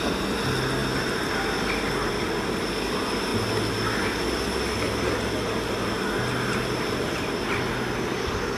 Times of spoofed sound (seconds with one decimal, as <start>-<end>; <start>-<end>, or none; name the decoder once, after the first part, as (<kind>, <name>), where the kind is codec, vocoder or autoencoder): none